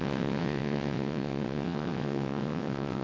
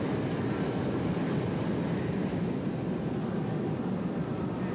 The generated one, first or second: first